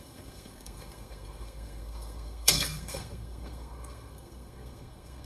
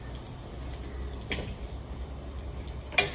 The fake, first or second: first